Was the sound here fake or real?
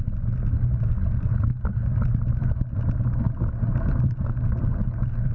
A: real